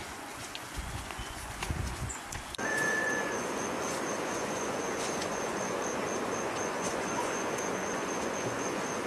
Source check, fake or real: fake